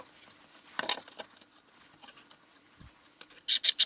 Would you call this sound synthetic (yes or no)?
no